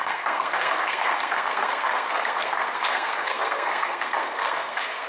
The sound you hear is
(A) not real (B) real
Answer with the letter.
A